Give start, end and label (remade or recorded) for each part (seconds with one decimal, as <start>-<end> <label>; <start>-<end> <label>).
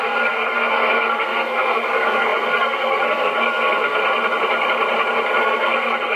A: 0.0-4.0 remade; 4.0-5.4 recorded; 5.4-6.2 remade